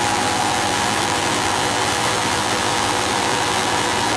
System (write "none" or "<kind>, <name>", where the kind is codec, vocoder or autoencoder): vocoder, BigVGAN v2